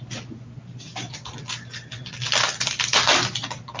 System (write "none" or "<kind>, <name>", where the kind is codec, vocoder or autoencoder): none